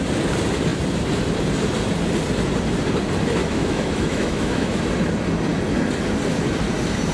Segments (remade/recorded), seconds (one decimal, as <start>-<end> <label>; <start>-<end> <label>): 0.0-3.4 recorded; 3.4-4.8 remade; 4.8-7.1 recorded